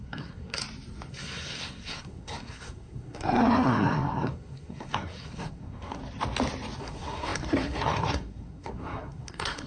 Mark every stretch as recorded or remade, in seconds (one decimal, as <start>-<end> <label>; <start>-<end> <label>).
0.0-0.6 remade; 0.6-1.1 recorded; 1.1-6.0 remade; 6.0-6.8 recorded; 6.8-9.7 remade